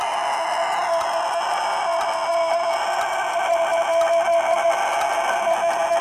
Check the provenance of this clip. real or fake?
real